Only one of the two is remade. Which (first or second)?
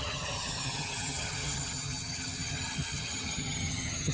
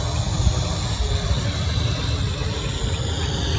first